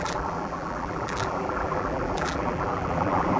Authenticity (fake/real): fake